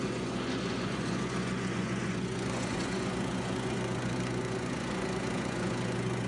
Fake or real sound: fake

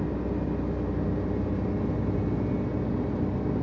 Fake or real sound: real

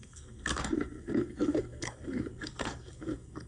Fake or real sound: fake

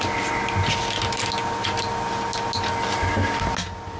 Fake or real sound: real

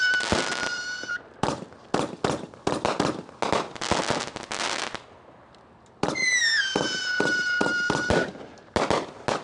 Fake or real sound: real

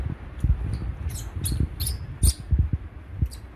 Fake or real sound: real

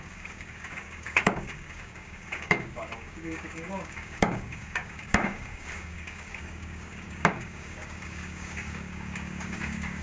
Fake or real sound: fake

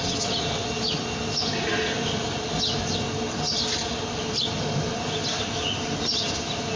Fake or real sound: real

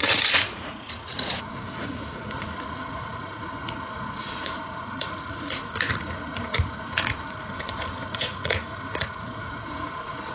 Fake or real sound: fake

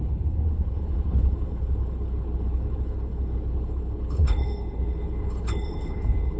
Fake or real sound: fake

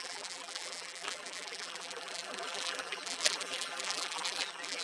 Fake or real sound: fake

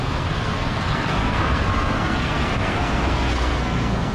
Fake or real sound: fake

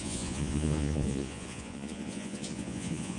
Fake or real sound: fake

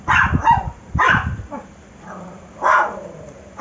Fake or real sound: fake